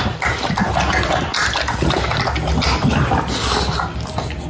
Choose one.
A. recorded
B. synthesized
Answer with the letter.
A